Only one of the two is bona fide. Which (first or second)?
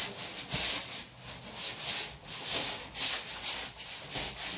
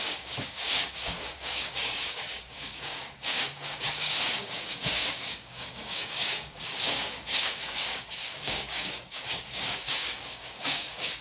first